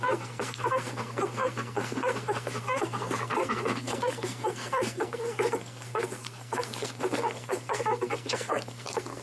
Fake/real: fake